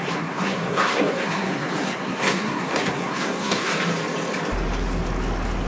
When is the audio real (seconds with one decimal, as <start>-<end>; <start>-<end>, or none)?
3.7-5.7